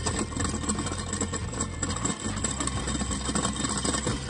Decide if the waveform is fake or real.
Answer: real